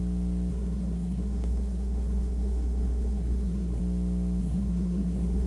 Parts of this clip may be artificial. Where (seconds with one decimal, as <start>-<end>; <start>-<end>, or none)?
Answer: 0.5-3.8; 4.4-5.5